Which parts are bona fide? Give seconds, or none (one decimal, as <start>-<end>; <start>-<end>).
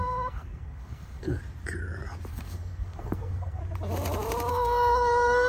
1.4-2.3; 3.6-4.5